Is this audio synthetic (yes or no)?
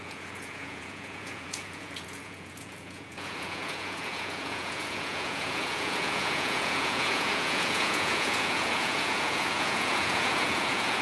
yes